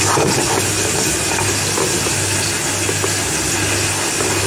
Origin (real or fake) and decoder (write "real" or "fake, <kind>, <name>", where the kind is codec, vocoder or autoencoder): real